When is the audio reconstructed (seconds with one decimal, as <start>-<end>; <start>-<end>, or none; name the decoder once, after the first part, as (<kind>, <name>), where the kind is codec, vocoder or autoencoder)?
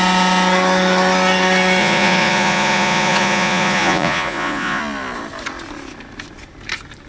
1.8-4.8 (vocoder, Vocos)